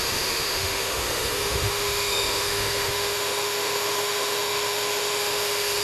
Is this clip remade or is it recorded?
remade